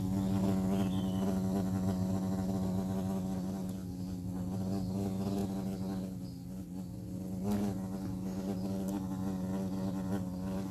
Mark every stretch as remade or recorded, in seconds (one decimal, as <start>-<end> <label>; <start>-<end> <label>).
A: 0.0-10.7 recorded